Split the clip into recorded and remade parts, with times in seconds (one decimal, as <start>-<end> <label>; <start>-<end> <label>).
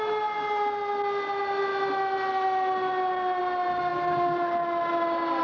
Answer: 0.0-5.4 recorded